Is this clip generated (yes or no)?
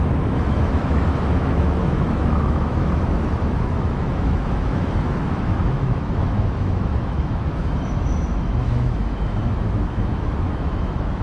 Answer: yes